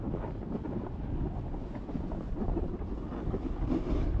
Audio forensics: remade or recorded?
recorded